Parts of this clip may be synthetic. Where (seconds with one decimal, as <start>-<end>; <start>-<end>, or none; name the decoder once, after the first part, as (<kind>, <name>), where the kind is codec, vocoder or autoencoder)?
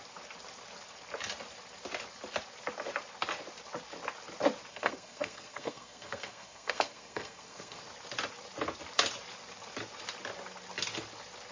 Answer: 4.7-7.8 (codec, SNAC)